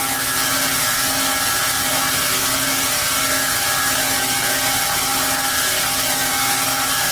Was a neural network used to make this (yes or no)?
no